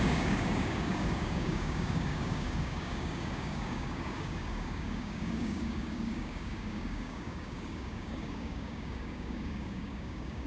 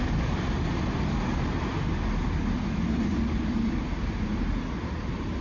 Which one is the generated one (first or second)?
first